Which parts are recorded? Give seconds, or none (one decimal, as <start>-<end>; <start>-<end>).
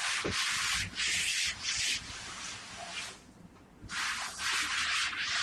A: 0.0-5.4